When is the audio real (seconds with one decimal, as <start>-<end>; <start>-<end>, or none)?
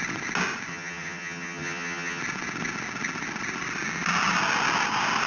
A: 0.0-0.7; 2.2-5.3